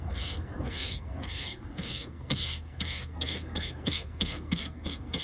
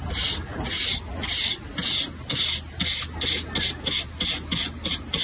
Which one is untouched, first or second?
second